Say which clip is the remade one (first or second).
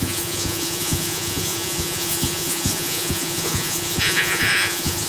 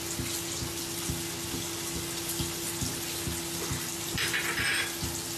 first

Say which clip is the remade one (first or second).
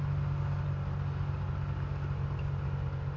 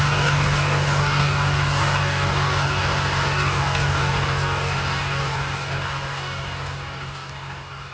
second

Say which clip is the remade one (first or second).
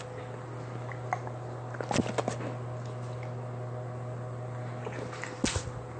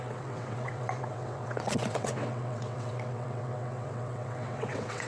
second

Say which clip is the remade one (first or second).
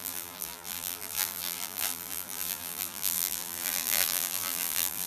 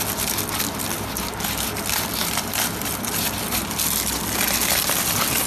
first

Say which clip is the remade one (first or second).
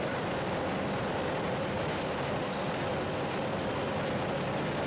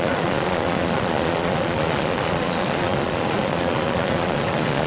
second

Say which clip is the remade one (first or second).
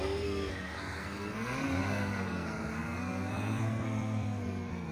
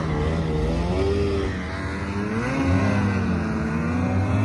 first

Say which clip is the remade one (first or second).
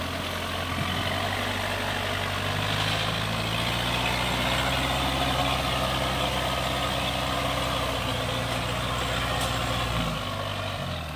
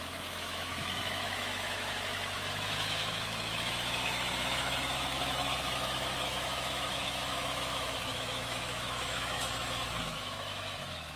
second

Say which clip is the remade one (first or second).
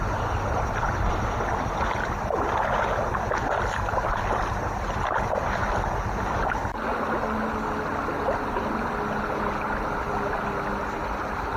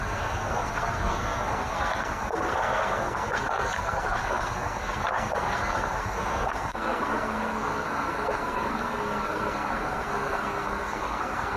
second